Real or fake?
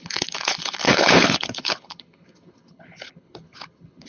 fake